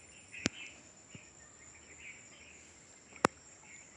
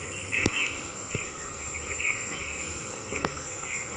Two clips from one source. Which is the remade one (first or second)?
second